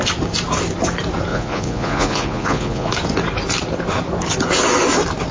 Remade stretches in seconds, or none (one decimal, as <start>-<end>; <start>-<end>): 1.3-2.9